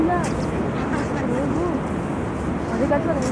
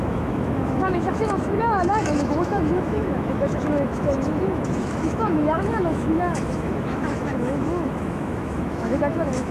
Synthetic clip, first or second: second